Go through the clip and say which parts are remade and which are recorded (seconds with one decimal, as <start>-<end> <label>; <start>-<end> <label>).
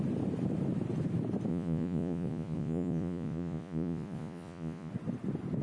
0.0-1.5 recorded; 1.5-4.9 remade; 4.9-5.6 recorded